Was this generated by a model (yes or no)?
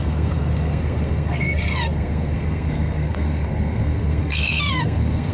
yes